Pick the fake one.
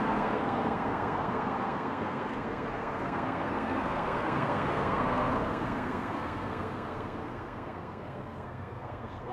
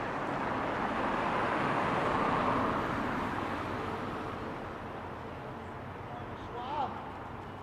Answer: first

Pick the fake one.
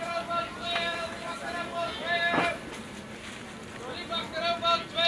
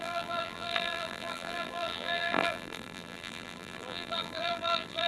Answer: second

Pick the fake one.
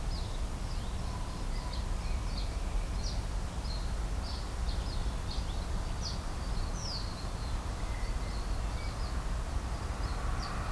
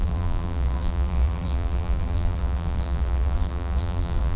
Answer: second